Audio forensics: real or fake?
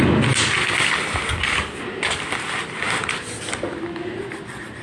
real